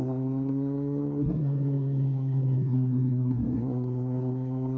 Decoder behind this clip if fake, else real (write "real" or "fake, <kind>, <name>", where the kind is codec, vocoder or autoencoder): fake, codec, SNAC